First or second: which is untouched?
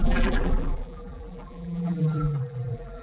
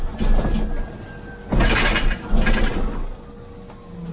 second